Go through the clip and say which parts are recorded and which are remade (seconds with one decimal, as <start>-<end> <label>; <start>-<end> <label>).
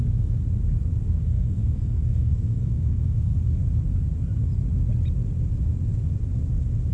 0.0-0.4 remade; 0.4-1.1 recorded; 1.1-3.6 remade; 3.6-6.9 recorded